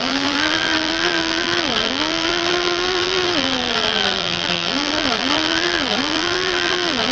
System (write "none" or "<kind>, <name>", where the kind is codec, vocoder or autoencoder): vocoder, BigVGAN v2